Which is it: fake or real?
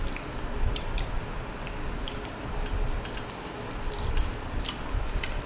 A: real